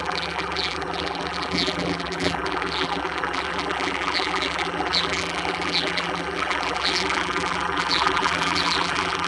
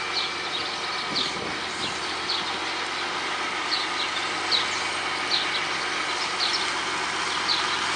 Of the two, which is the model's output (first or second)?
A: first